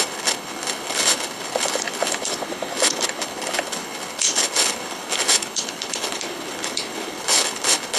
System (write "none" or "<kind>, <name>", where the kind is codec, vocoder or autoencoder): codec, HILCodec